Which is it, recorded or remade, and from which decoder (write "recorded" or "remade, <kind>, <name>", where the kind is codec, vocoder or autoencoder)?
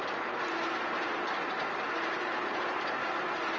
recorded